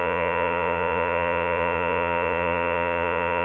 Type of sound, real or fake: fake